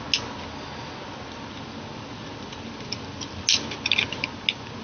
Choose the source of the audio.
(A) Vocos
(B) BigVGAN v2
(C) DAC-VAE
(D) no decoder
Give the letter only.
D